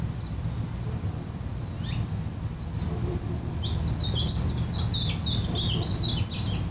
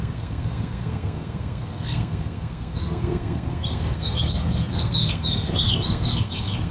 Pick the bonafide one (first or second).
first